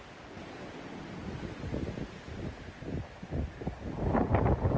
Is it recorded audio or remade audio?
recorded